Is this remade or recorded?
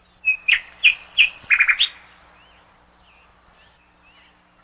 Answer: recorded